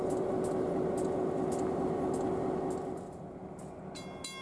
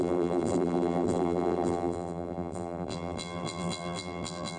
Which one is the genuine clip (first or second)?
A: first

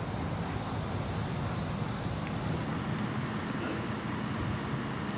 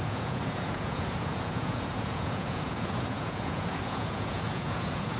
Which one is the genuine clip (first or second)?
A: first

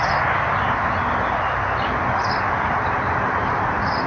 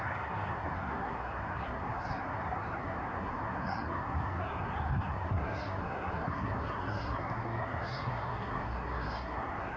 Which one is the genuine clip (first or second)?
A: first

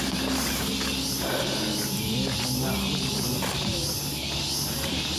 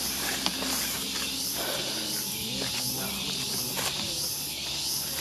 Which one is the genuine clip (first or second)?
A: first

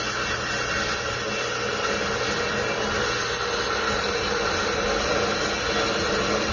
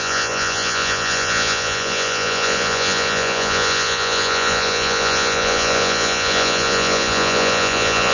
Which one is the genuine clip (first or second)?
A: first